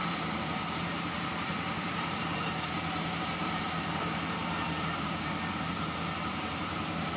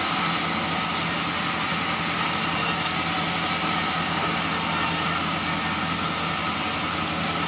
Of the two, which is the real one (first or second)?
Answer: second